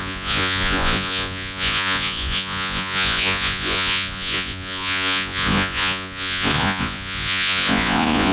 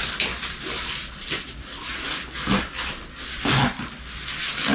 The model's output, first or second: first